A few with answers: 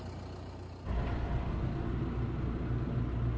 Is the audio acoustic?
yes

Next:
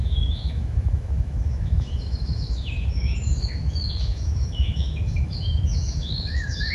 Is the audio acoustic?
no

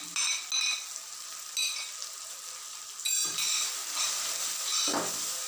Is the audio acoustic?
yes